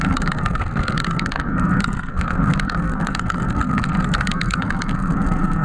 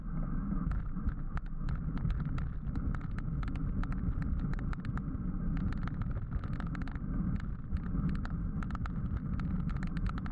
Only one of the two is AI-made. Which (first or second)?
first